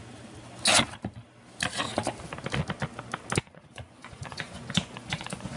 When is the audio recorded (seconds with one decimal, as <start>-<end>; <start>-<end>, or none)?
0.0-3.4